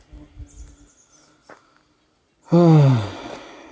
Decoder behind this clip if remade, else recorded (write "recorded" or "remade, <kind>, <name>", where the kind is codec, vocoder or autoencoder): recorded